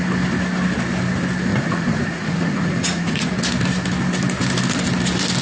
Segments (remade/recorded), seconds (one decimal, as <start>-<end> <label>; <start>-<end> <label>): 0.0-1.5 recorded; 1.5-3.3 remade; 3.3-5.4 recorded